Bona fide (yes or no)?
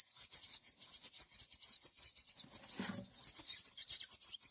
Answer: yes